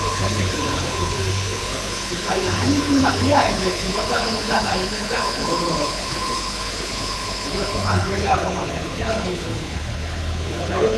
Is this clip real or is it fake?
fake